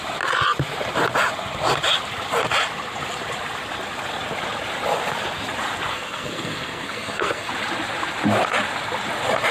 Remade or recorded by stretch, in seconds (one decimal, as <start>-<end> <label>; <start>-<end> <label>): 0.0-5.9 recorded; 5.9-7.5 remade; 7.5-9.5 recorded

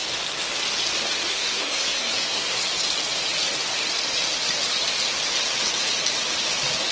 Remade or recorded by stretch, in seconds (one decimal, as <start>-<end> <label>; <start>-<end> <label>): 0.0-1.3 recorded; 1.3-2.6 remade; 2.6-6.9 recorded

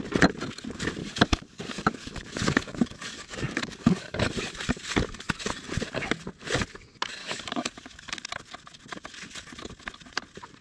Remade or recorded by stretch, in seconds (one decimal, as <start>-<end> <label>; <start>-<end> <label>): 0.0-1.0 recorded; 1.0-4.3 remade; 4.3-7.2 recorded; 7.2-8.1 remade; 8.1-10.6 recorded

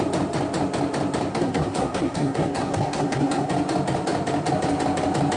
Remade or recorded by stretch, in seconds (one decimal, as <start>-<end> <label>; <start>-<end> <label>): 0.0-1.3 recorded; 1.3-3.5 remade; 3.5-5.4 recorded